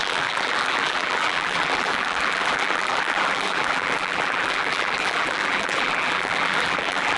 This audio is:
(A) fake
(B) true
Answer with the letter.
A